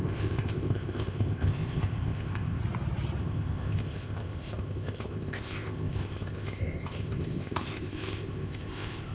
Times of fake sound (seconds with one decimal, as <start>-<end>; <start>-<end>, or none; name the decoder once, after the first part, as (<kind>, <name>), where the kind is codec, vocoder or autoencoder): 0.0-2.6 (codec, ZipCodec); 3.2-9.1